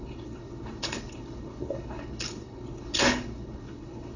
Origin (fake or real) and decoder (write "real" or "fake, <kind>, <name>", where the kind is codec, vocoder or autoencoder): fake, codec, HILCodec